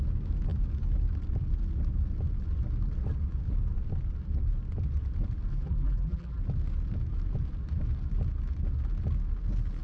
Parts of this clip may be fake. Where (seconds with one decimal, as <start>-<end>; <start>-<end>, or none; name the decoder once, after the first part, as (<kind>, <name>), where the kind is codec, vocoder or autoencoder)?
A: 5.5-6.4 (vocoder, BigVGAN v2)